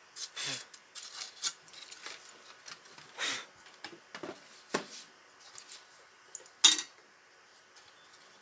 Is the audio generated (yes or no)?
no